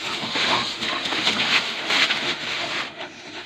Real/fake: fake